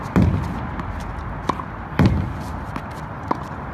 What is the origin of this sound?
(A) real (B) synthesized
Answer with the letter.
A